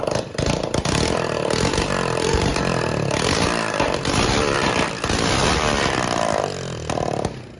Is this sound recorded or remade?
remade